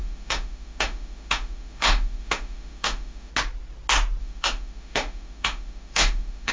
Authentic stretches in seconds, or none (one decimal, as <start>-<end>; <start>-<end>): 3.3-4.2